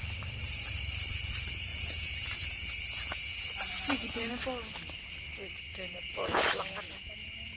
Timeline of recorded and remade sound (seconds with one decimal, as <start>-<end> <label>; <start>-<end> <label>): 0.0-1.7 recorded; 1.7-4.3 remade; 4.3-5.7 recorded; 5.7-7.6 remade